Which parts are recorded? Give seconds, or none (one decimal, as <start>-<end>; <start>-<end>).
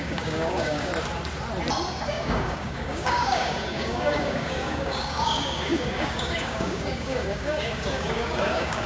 0.9-2.1